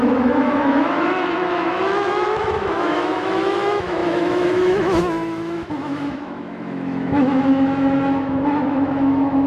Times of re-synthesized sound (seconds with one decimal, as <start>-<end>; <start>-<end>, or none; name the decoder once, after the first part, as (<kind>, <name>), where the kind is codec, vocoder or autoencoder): 0.0-9.5 (autoencoder, DAC-VAE)